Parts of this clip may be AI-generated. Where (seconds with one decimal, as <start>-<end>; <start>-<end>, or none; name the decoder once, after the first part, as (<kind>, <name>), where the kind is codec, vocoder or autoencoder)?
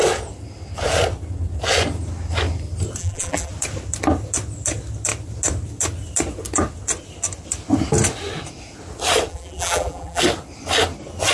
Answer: 3.0-3.5 (vocoder, BigVGAN v2); 9.3-10.2